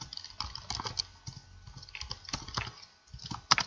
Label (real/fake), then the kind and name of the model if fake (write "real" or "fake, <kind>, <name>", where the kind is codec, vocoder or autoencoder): real